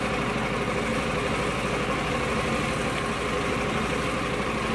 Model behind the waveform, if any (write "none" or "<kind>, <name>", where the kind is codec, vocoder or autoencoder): none